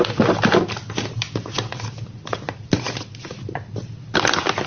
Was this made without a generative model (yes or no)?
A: yes